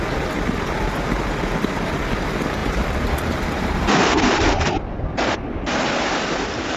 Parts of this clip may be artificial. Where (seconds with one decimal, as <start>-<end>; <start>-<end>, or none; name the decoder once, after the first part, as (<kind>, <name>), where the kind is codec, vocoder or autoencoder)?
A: 2.6-6.8 (vocoder, BigVGAN v2)